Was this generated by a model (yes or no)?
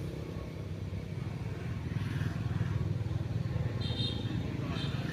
no